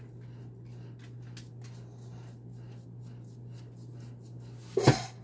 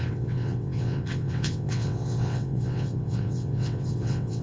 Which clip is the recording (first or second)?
first